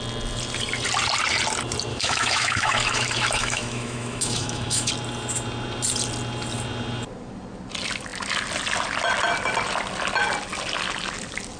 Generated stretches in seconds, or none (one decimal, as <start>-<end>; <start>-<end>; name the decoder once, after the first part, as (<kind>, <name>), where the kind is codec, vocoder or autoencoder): 1.9-4.9 (autoencoder, DAC-VAE)